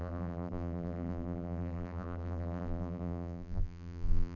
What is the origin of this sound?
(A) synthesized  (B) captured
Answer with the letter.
A